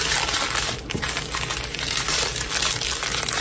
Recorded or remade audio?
recorded